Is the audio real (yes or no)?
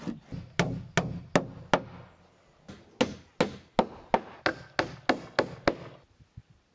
yes